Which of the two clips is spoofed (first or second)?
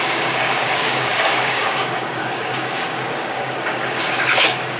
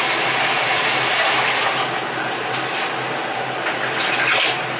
first